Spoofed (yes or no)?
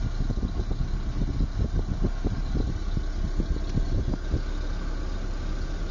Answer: no